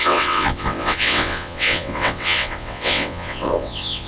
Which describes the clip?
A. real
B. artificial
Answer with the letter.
B